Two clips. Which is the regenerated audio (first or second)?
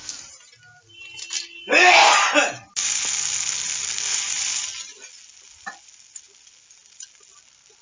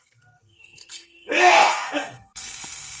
second